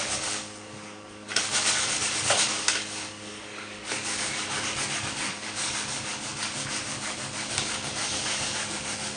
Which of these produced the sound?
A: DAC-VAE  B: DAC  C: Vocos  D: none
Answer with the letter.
B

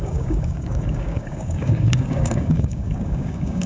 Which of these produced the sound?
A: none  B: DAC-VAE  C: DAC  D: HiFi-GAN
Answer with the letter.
C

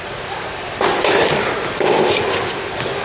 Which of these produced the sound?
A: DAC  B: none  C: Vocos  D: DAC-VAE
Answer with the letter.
B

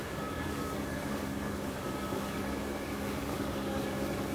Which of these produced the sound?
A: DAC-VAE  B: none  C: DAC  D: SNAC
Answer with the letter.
C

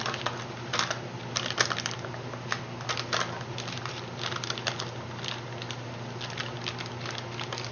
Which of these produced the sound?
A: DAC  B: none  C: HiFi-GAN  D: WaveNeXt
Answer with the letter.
B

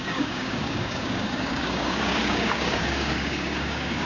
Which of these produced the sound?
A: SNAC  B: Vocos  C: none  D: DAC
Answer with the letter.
D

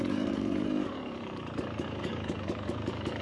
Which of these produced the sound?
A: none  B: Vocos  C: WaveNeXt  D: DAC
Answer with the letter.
D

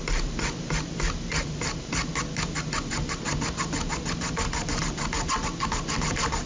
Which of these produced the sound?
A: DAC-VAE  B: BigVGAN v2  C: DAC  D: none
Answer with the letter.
D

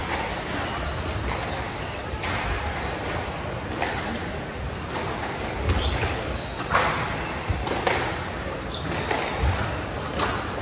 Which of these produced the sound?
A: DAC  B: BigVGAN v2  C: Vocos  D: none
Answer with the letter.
D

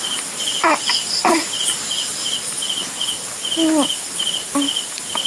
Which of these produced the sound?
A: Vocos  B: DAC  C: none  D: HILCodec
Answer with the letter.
C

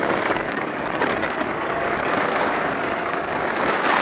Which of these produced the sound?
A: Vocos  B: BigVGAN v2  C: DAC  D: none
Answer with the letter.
C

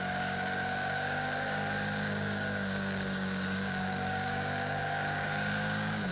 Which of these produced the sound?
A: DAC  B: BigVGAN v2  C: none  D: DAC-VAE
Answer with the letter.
A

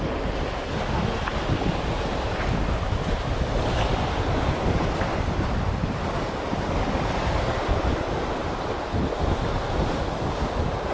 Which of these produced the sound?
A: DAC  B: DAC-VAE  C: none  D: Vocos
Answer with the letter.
C